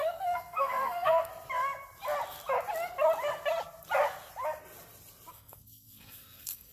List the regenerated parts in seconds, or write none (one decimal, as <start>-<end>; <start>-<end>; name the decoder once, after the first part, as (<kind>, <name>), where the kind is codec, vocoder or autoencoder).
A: 0.0-1.3 (codec, SNAC); 5.3-6.7